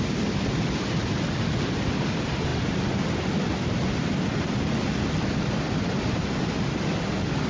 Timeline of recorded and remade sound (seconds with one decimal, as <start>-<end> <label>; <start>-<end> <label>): 0.0-7.5 recorded